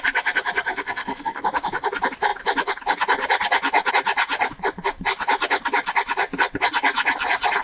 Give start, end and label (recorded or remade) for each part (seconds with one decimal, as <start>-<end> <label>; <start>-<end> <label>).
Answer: 0.0-0.7 recorded; 0.7-1.4 remade; 1.4-7.6 recorded